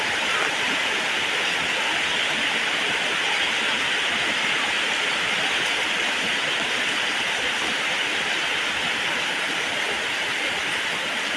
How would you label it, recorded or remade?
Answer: recorded